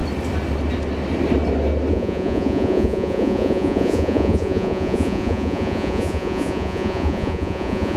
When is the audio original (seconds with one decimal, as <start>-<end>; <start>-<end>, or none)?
0.0-1.9